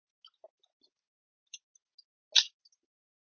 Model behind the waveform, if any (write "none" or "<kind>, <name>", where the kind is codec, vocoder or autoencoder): none